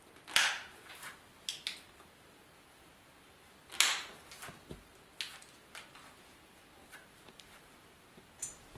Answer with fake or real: real